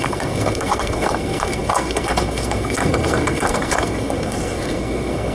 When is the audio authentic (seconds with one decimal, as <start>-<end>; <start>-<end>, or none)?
none